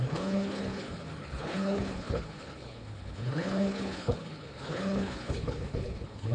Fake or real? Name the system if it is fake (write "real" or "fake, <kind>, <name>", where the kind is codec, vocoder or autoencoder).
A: fake, codec, HILCodec